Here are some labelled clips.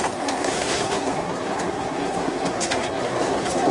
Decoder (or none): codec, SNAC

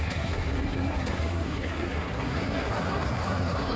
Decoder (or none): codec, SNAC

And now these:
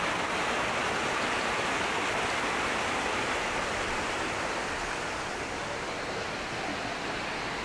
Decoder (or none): none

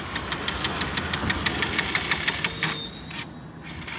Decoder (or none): none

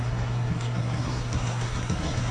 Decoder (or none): codec, SNAC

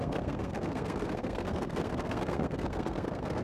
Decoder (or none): codec, SNAC